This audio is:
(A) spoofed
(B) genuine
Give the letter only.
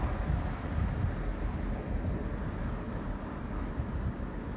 B